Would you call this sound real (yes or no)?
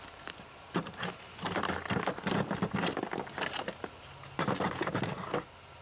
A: yes